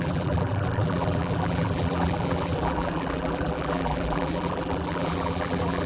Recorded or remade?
remade